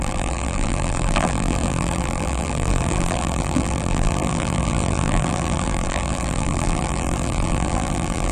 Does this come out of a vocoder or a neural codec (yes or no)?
yes